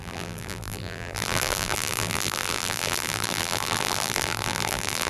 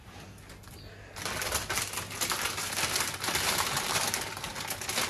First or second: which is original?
second